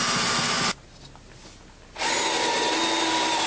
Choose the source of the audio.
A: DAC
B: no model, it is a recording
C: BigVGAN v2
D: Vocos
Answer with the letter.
B